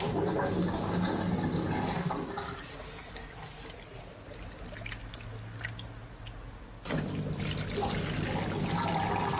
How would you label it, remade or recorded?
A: recorded